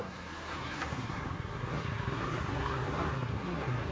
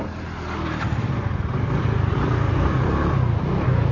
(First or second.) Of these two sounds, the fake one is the first